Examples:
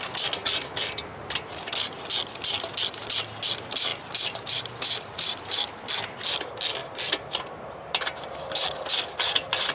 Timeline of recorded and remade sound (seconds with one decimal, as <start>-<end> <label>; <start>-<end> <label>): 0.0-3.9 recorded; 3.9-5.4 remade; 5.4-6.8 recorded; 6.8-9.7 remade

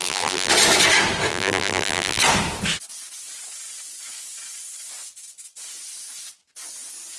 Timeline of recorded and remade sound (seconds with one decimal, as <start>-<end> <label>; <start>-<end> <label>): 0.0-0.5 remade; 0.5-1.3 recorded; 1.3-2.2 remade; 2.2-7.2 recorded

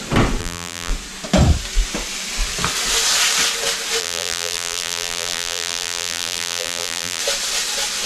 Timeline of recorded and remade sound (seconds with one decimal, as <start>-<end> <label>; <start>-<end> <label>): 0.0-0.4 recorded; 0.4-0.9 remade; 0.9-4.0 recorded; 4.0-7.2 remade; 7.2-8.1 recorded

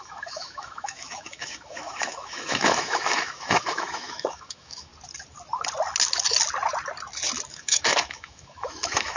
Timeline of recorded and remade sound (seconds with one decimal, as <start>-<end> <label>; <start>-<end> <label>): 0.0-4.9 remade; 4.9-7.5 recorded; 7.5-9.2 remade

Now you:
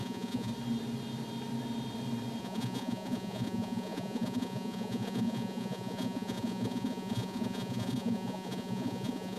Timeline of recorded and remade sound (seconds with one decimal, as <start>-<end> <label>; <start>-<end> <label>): 0.0-0.5 remade; 0.5-2.4 recorded; 2.4-9.4 remade

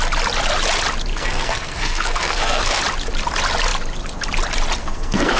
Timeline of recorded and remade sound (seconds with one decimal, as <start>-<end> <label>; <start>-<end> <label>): 0.0-1.1 recorded; 1.1-2.8 remade; 2.8-4.8 recorded; 4.8-5.4 remade